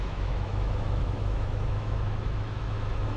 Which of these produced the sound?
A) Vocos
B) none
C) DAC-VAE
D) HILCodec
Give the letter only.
C